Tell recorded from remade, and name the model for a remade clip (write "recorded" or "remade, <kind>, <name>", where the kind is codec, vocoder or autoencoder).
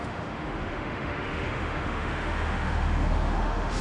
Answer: remade, autoencoder, DAC-VAE